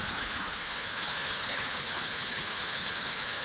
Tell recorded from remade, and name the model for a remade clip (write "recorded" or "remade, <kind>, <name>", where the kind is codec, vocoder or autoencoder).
remade, codec, HILCodec